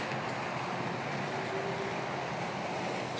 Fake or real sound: real